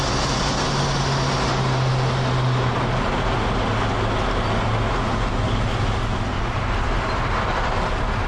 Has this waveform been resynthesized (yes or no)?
no